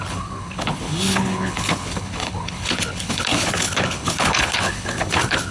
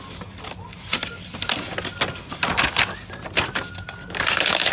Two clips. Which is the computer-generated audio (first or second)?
first